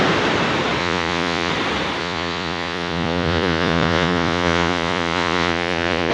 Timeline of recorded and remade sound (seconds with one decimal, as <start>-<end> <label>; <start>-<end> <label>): 0.0-0.8 recorded; 0.8-1.5 remade; 1.5-2.0 recorded; 2.0-6.1 remade